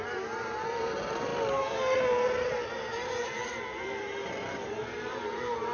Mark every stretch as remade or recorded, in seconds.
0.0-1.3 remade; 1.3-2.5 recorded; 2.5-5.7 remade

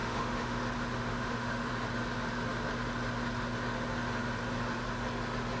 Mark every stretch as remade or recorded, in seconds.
0.0-0.6 remade; 0.6-1.1 recorded; 1.1-1.7 remade; 1.7-5.6 recorded

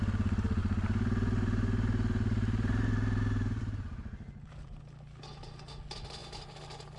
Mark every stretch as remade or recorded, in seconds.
0.0-0.6 recorded; 0.6-4.8 remade; 4.8-6.2 recorded; 6.2-7.0 remade

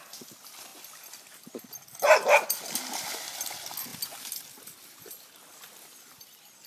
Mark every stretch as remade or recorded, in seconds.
0.0-6.7 recorded

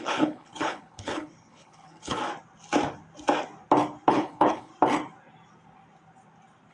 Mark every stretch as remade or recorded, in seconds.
0.0-2.2 remade; 2.2-4.1 recorded; 4.1-4.7 remade; 4.7-6.7 recorded

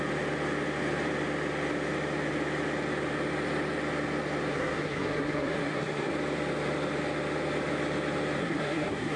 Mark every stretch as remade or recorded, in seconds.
0.0-4.5 recorded; 4.5-6.1 remade; 6.1-8.4 recorded; 8.4-9.2 remade